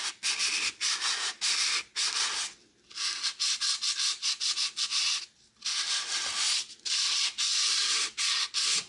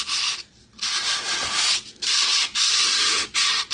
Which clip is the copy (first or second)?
second